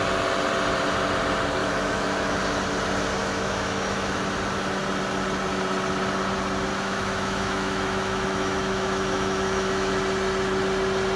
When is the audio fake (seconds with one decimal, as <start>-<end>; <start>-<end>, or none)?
1.6-2.4; 3.2-4.2; 6.7-9.9